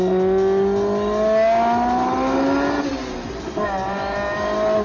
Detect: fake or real real